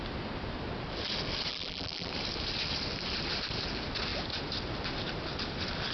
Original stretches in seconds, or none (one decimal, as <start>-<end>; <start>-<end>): 0.0-1.5; 2.1-5.9